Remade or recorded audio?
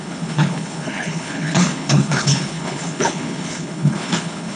remade